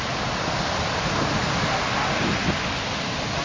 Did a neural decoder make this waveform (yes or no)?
no